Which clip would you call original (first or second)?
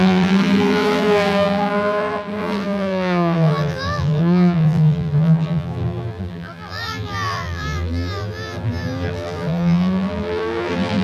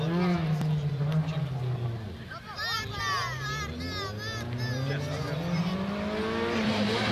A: second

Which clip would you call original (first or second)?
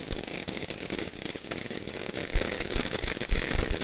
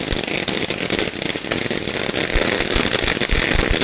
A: second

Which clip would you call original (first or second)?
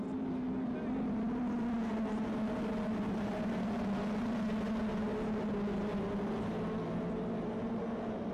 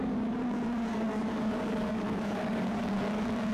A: first